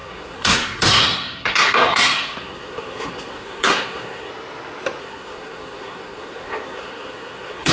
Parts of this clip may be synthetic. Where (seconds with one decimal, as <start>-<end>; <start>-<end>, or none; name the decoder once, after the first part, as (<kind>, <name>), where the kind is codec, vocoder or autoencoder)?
0.0-4.3 (codec, SNAC); 5.0-7.7